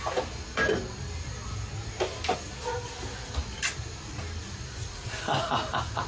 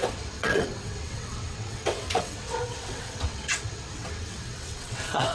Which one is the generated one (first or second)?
second